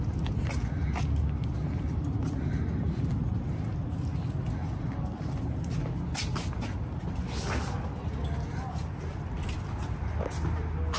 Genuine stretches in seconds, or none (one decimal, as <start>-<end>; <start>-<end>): 0.0-11.0